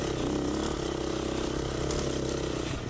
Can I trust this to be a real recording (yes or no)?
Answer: yes